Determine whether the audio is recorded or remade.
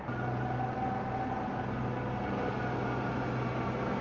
recorded